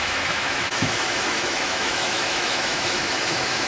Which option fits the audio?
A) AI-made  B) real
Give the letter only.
A